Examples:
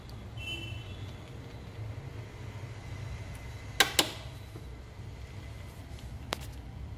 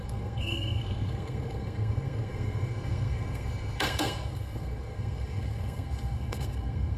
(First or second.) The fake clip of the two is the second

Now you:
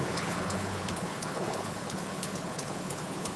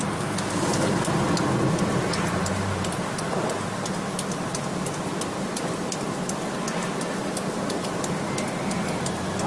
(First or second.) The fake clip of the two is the first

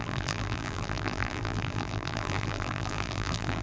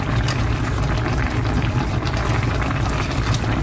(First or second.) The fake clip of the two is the first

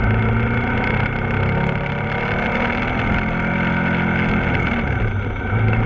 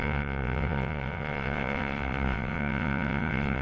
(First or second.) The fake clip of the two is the second